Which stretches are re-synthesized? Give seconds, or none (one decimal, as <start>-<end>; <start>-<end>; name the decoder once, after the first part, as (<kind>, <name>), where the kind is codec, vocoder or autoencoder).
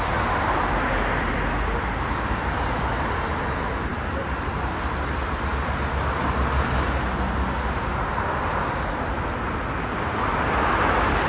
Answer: none